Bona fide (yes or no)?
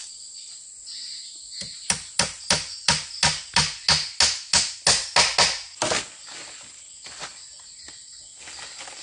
yes